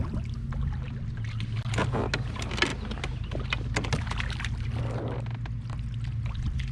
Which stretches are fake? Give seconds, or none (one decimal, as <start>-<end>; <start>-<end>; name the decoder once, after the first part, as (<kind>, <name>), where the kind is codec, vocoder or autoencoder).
none